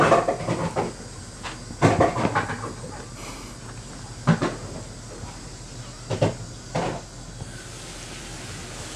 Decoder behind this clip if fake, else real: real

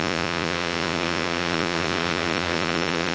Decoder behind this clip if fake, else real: fake, vocoder, Vocos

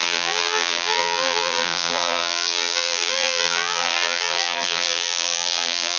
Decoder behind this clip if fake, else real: fake, vocoder, BigVGAN v2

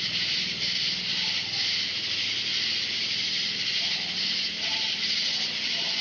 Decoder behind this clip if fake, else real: real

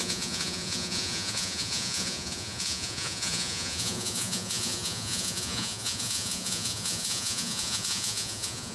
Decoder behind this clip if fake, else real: fake, vocoder, Vocos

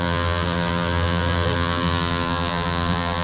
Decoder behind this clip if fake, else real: fake, vocoder, BigVGAN v2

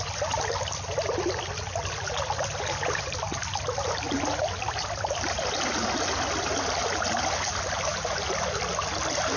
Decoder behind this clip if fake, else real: real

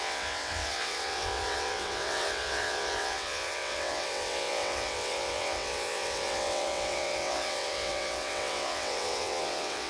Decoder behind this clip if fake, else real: fake, vocoder, WaveNeXt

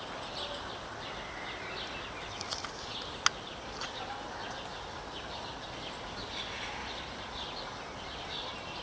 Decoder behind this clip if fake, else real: real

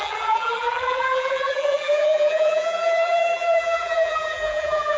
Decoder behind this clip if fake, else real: fake, vocoder, BigVGAN v2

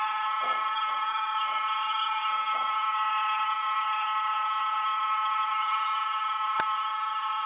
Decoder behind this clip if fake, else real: fake, vocoder, HiFi-GAN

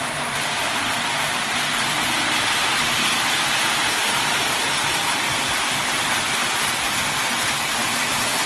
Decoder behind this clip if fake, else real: real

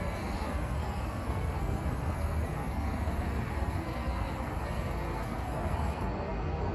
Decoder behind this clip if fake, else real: fake, codec, SNAC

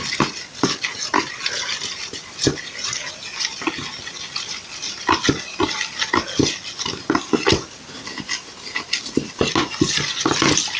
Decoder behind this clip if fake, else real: real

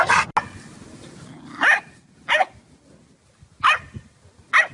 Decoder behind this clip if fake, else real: real